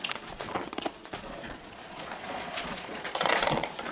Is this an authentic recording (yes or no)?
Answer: no